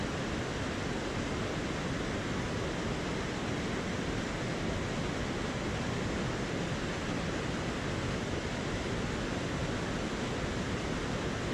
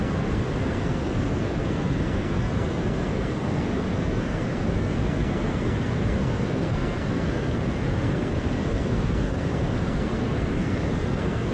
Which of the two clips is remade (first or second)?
second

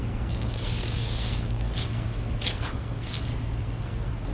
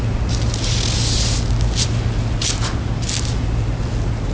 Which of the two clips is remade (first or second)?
first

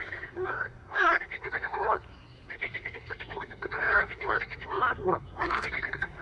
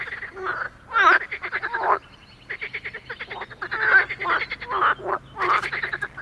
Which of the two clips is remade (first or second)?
first